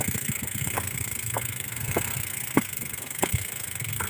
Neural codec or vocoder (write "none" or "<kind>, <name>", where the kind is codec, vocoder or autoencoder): codec, SNAC